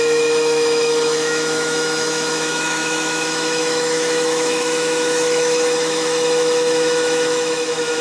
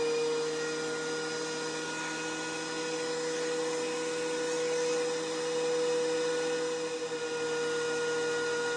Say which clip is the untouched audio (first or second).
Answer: second